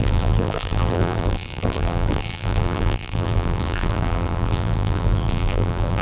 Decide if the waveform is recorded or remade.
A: remade